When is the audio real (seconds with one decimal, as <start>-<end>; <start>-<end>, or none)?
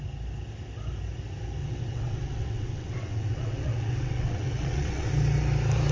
0.0-1.6; 5.1-5.9